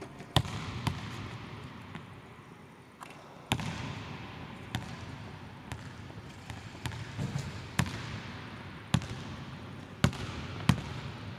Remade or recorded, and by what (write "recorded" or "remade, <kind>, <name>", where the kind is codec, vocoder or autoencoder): recorded